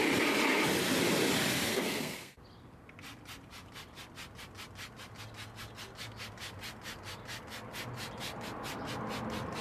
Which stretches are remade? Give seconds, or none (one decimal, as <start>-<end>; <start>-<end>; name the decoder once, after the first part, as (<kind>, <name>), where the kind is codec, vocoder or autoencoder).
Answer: 1.7-2.4 (codec, SNAC)